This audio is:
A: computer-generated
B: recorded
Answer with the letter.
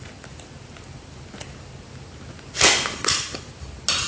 B